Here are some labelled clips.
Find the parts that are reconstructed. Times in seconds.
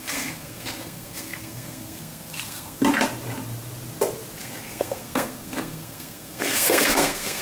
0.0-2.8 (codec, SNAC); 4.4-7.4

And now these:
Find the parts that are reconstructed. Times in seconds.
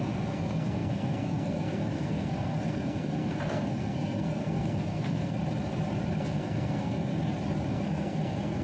0.0-5.4 (codec, SNAC); 6.1-7.1; 7.7-8.6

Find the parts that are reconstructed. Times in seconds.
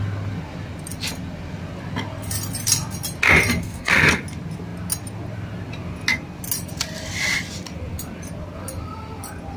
3.6-4.2 (codec, SNAC)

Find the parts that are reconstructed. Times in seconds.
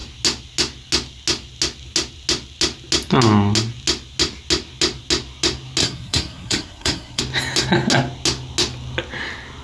5.8-7.2 (codec, SNAC)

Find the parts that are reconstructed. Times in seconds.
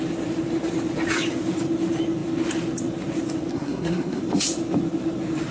3.5-4.2 (codec, SNAC)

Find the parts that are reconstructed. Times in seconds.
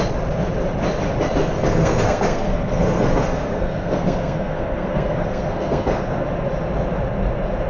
1.4-6.0 (codec, SNAC)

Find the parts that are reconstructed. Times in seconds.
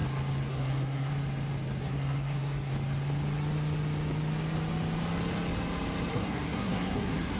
0.5-1.1 (codec, SNAC); 1.8-2.7; 6.1-7.4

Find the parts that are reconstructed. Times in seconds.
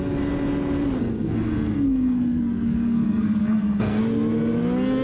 1.0-4.0 (codec, SNAC)